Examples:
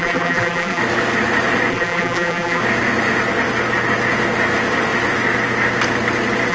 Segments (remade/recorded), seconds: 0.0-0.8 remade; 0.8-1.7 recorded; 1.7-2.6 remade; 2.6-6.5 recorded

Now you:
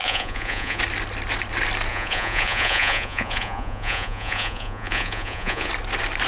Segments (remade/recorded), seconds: 0.0-0.8 remade; 0.8-1.9 recorded; 1.9-5.7 remade; 5.7-6.3 recorded